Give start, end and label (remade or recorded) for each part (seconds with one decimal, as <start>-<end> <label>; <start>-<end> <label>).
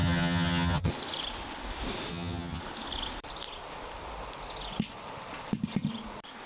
0.0-0.9 remade; 0.9-2.1 recorded; 2.1-2.6 remade; 2.6-6.5 recorded